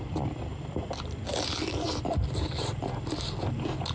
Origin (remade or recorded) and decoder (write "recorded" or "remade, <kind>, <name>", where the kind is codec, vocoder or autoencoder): recorded